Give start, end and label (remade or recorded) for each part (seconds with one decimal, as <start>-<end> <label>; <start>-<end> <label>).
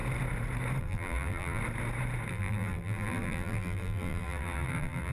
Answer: 0.0-0.8 recorded; 0.8-1.6 remade; 1.6-2.3 recorded; 2.3-5.1 remade